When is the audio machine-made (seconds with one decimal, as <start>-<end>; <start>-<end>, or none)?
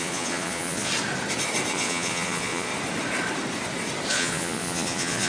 0.0-0.9; 1.7-2.7; 4.1-5.3